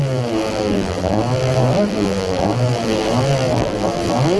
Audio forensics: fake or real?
fake